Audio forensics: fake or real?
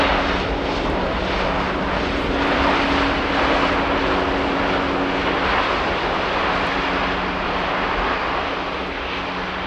real